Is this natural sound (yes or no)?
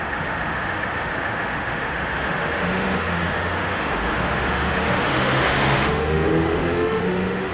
no